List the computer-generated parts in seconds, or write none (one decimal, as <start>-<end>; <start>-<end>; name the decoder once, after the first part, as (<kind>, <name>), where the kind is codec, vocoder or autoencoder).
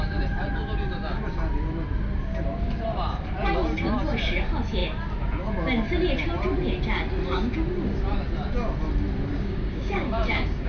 9.3-10.7 (codec, DAC)